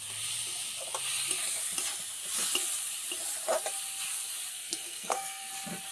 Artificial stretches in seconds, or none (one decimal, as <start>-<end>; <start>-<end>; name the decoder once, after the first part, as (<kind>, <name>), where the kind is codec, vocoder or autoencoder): 4.5-5.5 (codec, SNAC)